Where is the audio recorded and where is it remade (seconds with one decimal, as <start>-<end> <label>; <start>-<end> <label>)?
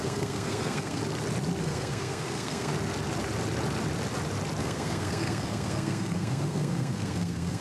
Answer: 0.0-1.0 remade; 1.0-1.6 recorded; 1.6-2.7 remade; 2.7-4.6 recorded; 4.6-7.6 remade